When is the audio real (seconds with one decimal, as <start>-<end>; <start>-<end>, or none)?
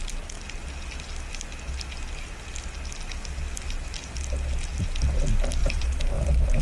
0.0-5.6